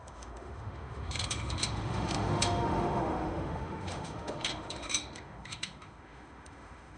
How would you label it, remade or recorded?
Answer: remade